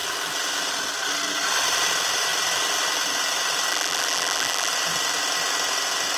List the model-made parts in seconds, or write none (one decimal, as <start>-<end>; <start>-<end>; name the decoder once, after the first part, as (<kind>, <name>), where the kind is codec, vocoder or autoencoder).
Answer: 3.7-4.7 (vocoder, BigVGAN v2)